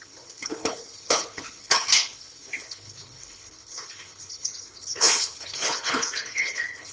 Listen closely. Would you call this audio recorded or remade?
remade